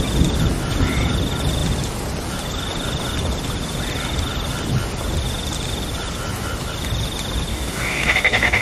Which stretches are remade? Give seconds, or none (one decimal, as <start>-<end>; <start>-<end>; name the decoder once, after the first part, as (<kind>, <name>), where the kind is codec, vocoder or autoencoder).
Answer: 7.5-8.6 (codec, DAC)